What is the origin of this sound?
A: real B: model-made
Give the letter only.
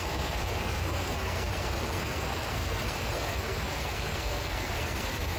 B